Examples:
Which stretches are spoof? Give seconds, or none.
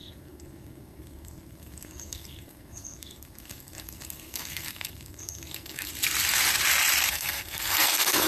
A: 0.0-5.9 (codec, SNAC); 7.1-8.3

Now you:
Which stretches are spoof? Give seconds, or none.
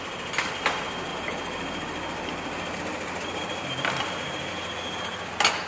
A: 1.1-4.5 (vocoder, BigVGAN v2)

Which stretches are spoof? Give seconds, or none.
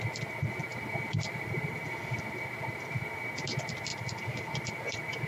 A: 0.7-3.3 (vocoder, BigVGAN v2); 3.9-5.3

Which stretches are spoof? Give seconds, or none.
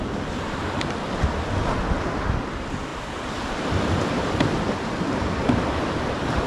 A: 0.0-6.5 (vocoder, BigVGAN v2)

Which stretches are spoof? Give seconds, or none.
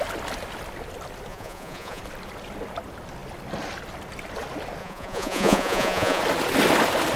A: 1.3-2.0 (vocoder, Vocos); 4.8-6.2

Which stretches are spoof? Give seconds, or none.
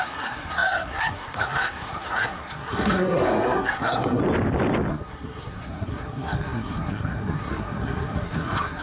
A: 0.0-4.2 (codec, SNAC); 4.9-8.8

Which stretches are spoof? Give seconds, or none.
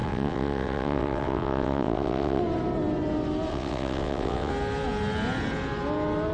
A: 0.0-2.4 (vocoder, WaveNeXt); 3.5-4.5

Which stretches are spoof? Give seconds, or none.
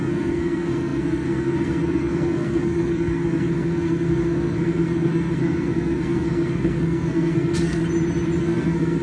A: 0.0-7.8 (codec, SNAC); 8.4-9.0